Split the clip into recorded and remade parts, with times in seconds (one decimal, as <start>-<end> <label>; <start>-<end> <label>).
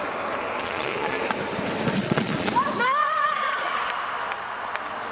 0.0-0.6 recorded; 0.6-1.2 remade; 1.2-2.0 recorded; 2.0-2.5 remade; 2.5-3.0 recorded; 3.0-3.7 remade; 3.7-5.1 recorded